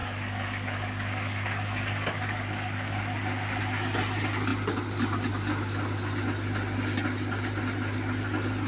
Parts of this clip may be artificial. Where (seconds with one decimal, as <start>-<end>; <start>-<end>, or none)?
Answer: 0.0-3.6